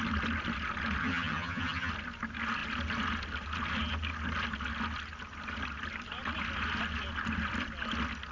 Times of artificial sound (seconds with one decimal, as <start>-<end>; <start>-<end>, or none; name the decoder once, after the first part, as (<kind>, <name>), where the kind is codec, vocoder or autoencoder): 1.0-1.9 (vocoder, HiFi-GAN)